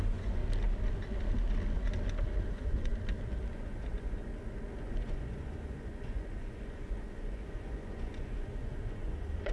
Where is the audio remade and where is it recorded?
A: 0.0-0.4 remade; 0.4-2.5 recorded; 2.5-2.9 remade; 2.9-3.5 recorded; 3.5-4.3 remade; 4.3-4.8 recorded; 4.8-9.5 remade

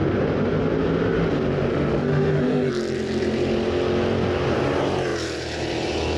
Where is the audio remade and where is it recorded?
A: 0.0-1.7 recorded; 1.7-2.7 remade; 2.7-6.2 recorded

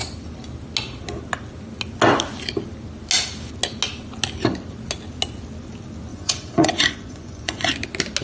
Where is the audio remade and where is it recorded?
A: 0.0-6.1 recorded; 6.1-7.7 remade; 7.7-8.2 recorded

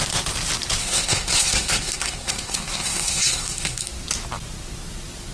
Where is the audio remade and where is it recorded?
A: 0.0-0.8 recorded; 0.8-3.9 remade; 3.9-5.3 recorded